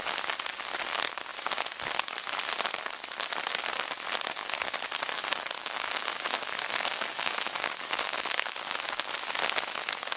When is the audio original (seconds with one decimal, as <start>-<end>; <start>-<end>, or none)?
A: 0.0-5.6; 9.1-10.2